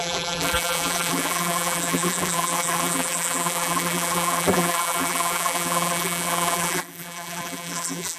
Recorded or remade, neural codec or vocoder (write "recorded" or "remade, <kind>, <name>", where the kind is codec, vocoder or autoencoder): remade, vocoder, BigVGAN v2